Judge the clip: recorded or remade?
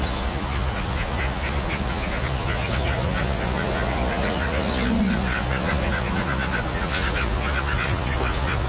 remade